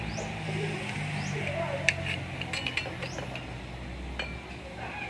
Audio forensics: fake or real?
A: real